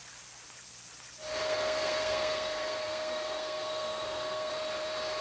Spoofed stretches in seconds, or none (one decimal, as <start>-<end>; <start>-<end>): 1.4-4.5